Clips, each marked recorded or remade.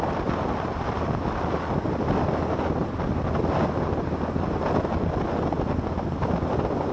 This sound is recorded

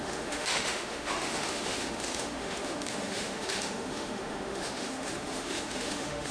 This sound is remade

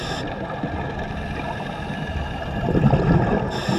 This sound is recorded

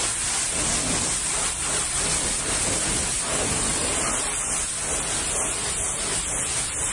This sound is recorded